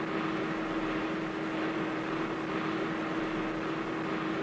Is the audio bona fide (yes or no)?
yes